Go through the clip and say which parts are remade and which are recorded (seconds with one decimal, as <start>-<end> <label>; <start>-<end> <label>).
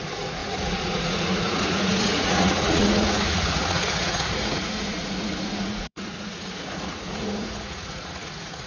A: 0.0-8.7 remade